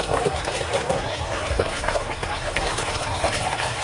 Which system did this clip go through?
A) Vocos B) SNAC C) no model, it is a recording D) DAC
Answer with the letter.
B